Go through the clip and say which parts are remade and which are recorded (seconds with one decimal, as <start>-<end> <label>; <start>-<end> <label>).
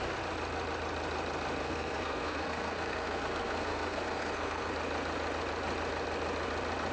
0.0-1.6 recorded; 1.6-4.7 remade; 4.7-6.9 recorded